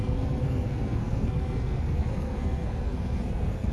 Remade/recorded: remade